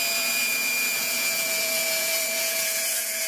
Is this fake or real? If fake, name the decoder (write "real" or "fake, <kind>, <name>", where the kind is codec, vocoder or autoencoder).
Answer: fake, vocoder, Vocos